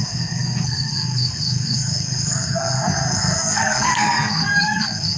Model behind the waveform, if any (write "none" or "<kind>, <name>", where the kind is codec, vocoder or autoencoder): codec, SNAC